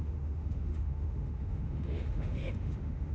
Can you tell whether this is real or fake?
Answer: fake